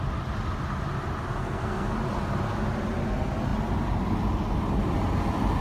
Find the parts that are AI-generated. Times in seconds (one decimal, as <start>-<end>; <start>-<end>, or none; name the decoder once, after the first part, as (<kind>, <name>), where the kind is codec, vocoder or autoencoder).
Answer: 1.4-1.9 (codec, SNAC)